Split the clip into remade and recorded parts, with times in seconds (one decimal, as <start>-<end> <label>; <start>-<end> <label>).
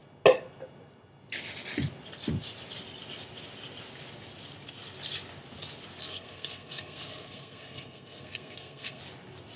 0.0-6.0 recorded; 6.0-9.0 remade; 9.0-9.6 recorded